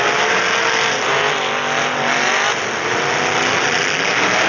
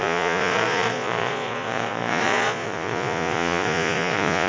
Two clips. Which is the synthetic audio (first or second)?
second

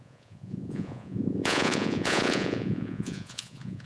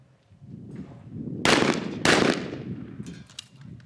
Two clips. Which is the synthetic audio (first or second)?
first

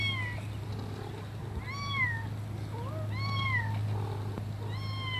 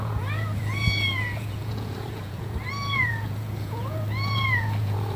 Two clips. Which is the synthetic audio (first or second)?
second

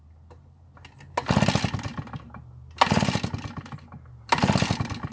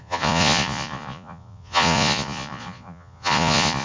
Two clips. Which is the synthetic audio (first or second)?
second